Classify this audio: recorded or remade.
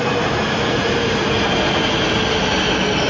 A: recorded